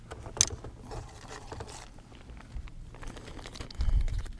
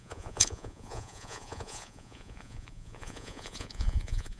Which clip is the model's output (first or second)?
second